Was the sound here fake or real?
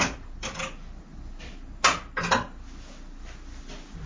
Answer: real